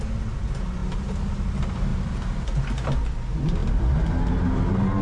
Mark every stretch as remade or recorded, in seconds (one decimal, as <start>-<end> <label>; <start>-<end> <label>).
0.0-1.9 recorded; 1.9-2.4 remade; 2.4-5.0 recorded